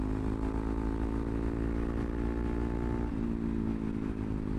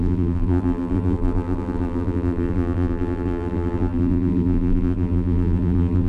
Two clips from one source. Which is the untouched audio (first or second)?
first